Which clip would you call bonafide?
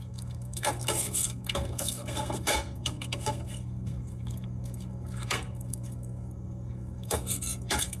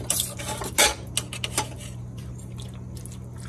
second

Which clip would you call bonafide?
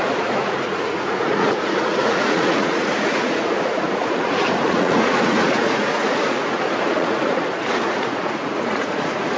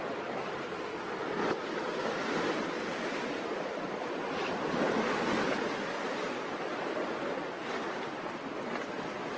second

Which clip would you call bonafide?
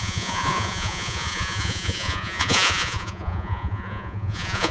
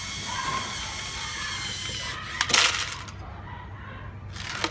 second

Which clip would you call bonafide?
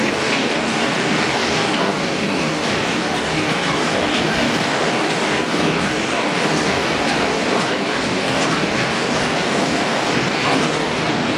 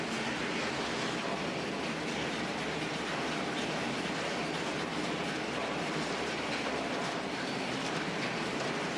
second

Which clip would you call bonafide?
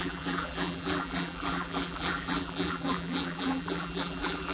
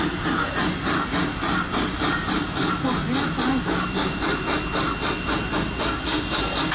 second